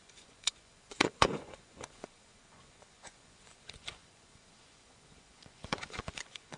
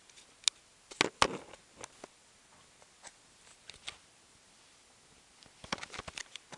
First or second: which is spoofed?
first